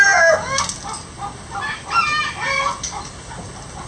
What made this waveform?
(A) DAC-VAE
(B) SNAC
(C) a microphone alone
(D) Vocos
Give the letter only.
C